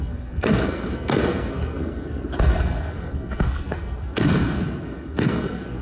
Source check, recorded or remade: remade